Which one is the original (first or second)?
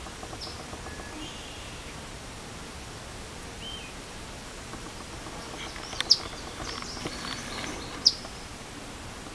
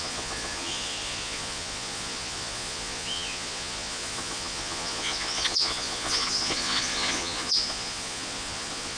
first